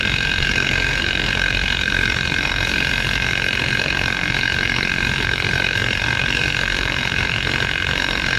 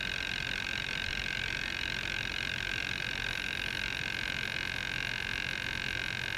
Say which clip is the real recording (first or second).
second